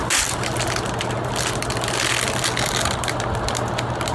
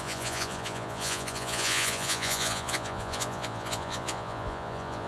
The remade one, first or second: second